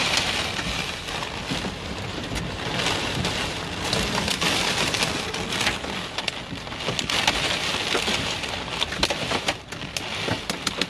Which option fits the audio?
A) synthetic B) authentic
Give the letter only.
B